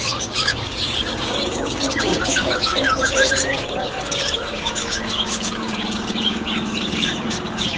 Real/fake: fake